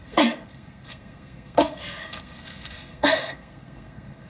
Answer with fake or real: fake